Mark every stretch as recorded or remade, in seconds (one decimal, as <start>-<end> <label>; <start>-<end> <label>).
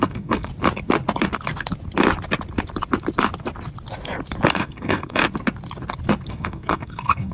0.0-0.5 remade; 0.5-4.5 recorded; 4.5-5.2 remade; 5.2-6.3 recorded; 6.3-7.3 remade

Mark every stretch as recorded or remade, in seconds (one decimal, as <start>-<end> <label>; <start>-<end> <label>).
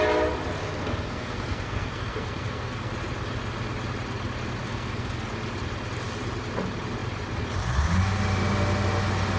0.0-0.6 recorded; 0.6-2.9 remade; 2.9-4.6 recorded; 4.6-5.3 remade; 5.3-9.4 recorded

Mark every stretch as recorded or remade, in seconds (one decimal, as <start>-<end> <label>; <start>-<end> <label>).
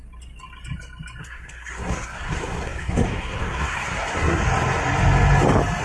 0.0-1.2 recorded; 1.2-4.4 remade; 4.4-5.8 recorded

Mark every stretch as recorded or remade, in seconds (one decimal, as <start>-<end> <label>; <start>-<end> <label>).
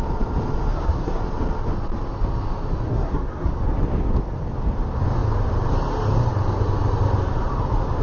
0.0-0.7 recorded; 0.7-1.2 remade; 1.2-2.9 recorded; 2.9-3.5 remade; 3.5-8.0 recorded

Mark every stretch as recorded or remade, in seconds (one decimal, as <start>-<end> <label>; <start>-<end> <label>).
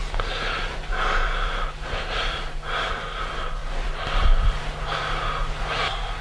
0.0-6.2 recorded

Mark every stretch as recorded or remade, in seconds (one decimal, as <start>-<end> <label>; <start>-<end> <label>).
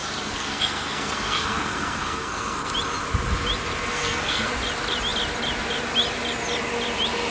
0.0-2.7 remade; 2.7-3.9 recorded; 3.9-4.5 remade; 4.5-7.3 recorded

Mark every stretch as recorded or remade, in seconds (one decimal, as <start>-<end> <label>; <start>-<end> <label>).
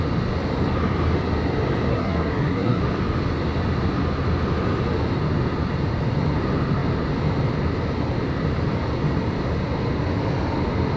0.0-1.9 recorded; 1.9-2.8 remade; 2.8-11.0 recorded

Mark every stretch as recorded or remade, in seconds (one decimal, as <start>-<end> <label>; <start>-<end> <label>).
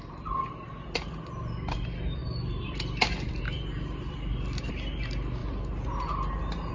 0.0-6.7 recorded